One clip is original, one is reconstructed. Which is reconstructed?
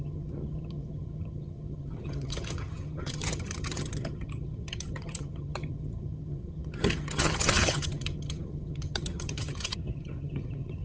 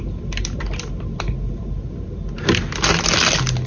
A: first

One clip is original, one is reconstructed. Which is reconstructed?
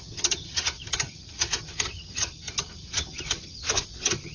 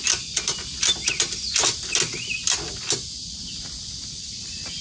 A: first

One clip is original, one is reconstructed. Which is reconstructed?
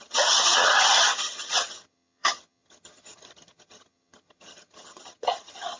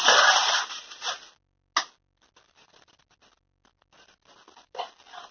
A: first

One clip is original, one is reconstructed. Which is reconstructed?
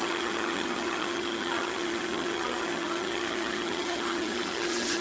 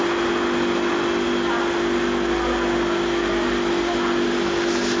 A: first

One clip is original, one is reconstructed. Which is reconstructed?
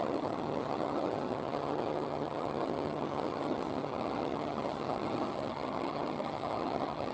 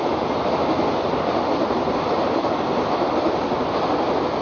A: first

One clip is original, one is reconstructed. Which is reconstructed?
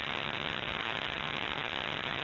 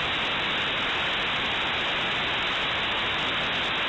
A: first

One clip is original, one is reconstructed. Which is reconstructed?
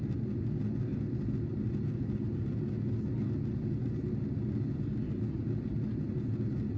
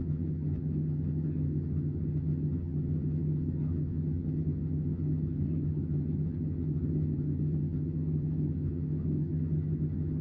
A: second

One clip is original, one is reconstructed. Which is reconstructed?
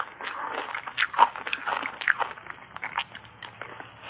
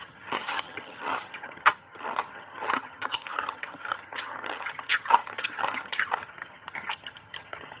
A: second